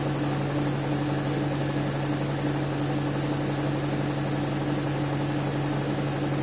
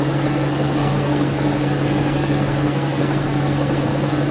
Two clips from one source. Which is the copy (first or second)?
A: second